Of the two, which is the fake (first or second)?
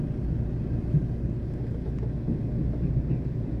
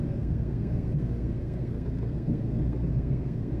second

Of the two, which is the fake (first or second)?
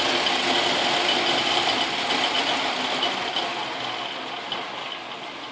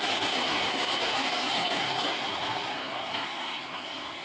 second